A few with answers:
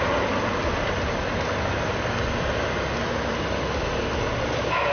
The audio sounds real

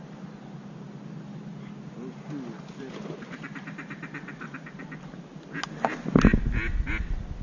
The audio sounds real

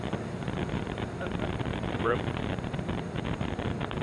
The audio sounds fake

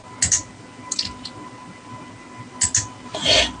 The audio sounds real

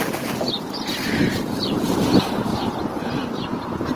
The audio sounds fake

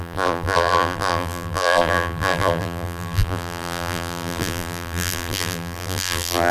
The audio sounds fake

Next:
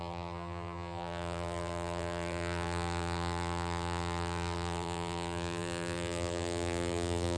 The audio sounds fake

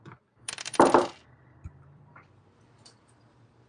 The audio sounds fake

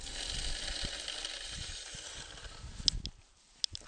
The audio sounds real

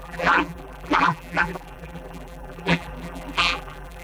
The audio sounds fake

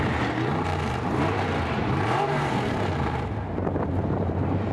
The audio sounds fake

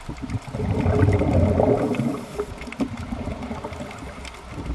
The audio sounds real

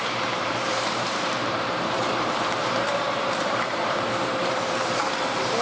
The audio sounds fake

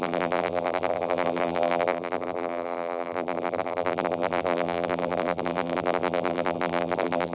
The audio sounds fake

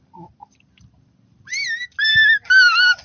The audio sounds real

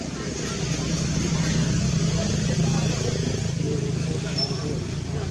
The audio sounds real